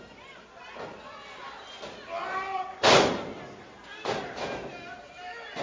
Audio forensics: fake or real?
real